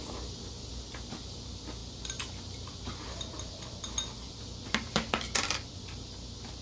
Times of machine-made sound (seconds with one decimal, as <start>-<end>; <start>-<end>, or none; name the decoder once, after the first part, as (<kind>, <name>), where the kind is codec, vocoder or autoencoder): none